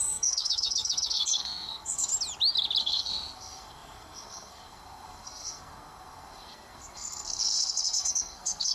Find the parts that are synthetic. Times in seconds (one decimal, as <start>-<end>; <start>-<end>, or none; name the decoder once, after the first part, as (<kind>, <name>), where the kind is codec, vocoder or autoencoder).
0.0-2.1 (codec, SNAC); 2.8-8.7